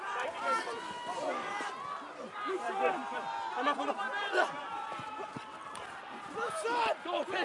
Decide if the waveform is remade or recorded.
remade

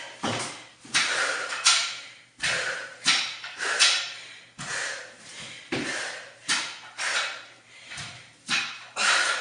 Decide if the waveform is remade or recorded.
remade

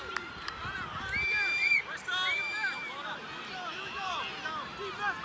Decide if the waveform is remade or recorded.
remade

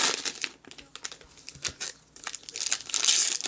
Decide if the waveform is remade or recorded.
recorded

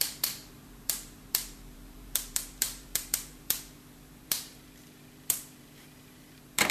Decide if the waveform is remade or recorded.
remade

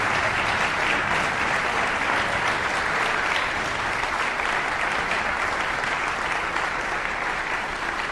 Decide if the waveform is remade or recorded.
remade